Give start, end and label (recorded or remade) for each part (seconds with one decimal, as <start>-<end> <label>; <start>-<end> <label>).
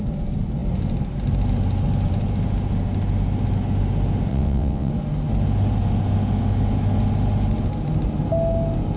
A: 0.0-4.3 recorded; 4.3-4.9 remade; 4.9-9.0 recorded